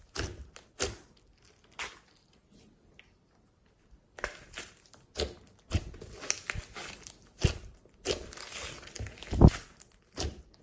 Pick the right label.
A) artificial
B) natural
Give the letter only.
B